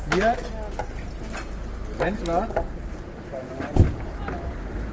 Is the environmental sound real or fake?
real